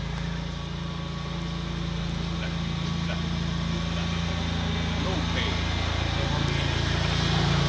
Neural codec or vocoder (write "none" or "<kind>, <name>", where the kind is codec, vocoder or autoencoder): none